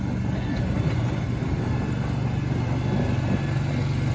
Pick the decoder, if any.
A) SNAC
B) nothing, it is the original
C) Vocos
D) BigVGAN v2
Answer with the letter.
B